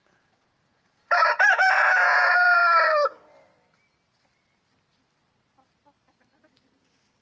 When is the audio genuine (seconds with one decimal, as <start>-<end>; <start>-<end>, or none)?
2.6-7.2